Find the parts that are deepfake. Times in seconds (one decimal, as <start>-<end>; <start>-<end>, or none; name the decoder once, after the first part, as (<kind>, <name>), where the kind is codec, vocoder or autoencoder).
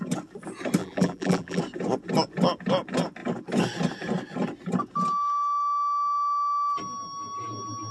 0.8-1.6 (vocoder, BigVGAN v2)